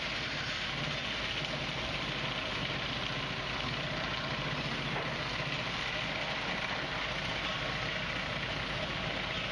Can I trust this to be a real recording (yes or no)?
yes